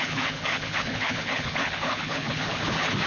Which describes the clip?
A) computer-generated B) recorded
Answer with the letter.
A